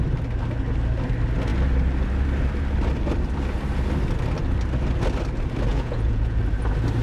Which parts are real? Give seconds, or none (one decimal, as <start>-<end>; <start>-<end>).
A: 0.0-5.7; 6.4-7.0